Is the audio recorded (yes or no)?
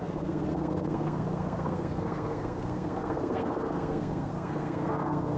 no